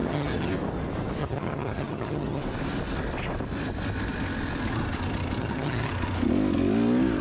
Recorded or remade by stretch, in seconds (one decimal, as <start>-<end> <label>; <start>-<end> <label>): 0.0-0.5 remade; 0.5-1.2 recorded; 1.2-2.4 remade; 2.4-5.4 recorded; 5.4-5.9 remade; 5.9-7.2 recorded